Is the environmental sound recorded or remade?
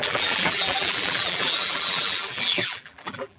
remade